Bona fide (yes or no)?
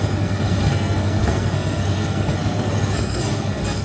no